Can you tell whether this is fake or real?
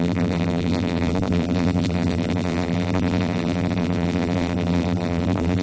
fake